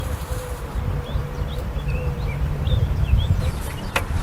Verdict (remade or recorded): remade